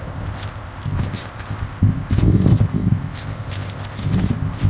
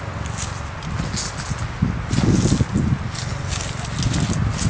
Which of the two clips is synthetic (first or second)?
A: first